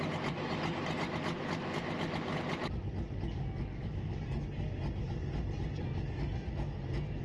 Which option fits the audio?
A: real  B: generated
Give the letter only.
A